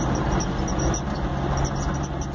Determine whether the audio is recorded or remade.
recorded